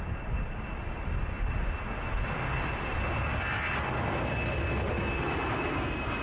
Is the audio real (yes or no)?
yes